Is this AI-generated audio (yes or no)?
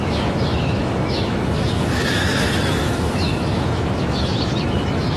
yes